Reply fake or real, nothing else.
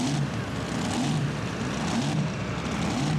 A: real